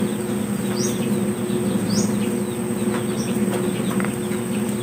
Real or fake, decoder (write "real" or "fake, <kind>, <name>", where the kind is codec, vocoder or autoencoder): real